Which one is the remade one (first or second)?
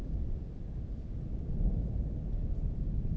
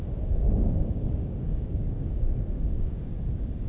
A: second